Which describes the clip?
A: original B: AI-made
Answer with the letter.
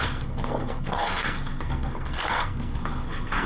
B